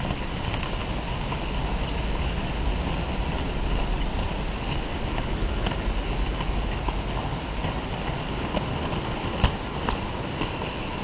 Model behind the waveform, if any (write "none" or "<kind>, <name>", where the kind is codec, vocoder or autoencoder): none